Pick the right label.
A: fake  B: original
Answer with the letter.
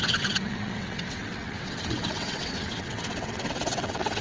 A